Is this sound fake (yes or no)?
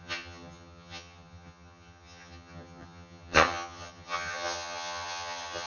yes